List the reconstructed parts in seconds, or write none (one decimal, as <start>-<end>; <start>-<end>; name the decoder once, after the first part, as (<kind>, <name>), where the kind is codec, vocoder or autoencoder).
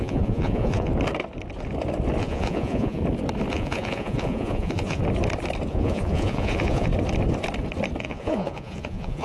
0.0-0.9 (vocoder, Vocos); 2.2-3.0; 3.5-5.0; 5.7-6.9; 8.0-9.2